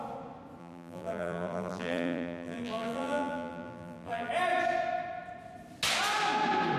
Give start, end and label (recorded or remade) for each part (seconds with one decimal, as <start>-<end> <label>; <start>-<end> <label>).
0.0-0.6 recorded; 0.6-4.3 remade; 4.3-6.8 recorded